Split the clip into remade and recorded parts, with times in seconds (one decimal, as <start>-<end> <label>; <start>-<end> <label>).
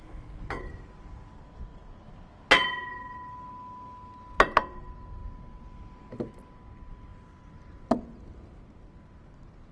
0.0-9.7 recorded